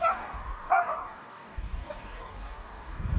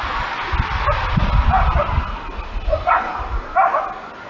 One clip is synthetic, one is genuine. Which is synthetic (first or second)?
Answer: first